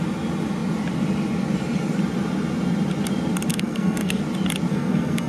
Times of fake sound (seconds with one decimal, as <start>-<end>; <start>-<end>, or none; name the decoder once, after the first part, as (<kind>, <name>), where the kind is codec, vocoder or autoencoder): 3.5-4.2 (codec, SNAC); 4.7-5.3